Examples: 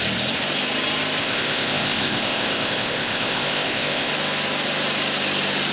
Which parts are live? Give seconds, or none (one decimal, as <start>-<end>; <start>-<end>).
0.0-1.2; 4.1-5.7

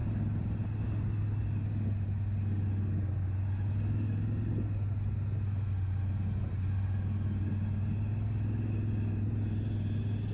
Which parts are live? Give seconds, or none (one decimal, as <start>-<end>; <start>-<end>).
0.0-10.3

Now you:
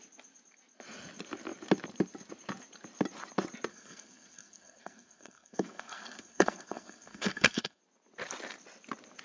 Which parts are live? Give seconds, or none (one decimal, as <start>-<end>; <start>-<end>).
0.0-3.7; 7.8-9.2

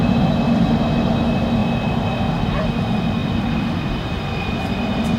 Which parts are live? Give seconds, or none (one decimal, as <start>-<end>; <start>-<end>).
0.0-5.2